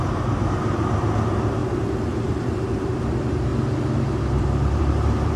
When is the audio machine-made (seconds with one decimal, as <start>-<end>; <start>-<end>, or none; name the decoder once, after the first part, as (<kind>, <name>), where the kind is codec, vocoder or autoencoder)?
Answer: 0.0-3.5 (vocoder, BigVGAN v2); 4.4-5.4